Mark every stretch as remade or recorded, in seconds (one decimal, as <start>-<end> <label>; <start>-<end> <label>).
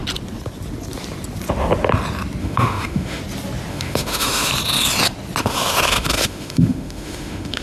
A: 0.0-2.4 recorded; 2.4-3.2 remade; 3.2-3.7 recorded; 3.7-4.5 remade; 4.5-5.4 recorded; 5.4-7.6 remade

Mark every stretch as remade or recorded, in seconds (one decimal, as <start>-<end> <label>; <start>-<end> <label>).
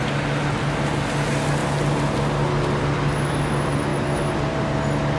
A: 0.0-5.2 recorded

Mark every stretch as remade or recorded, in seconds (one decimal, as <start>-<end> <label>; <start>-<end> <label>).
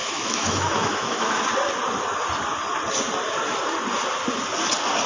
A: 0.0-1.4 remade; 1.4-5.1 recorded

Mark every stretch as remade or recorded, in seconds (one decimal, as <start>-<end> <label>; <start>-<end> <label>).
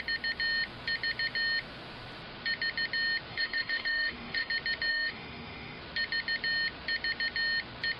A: 0.0-3.3 recorded; 3.3-4.5 remade; 4.5-4.9 recorded; 4.9-5.8 remade; 5.8-8.0 recorded